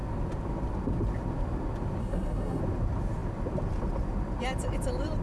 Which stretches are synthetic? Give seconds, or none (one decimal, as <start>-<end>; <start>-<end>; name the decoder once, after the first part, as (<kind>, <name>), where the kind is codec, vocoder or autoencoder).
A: 2.0-2.6 (codec, SNAC)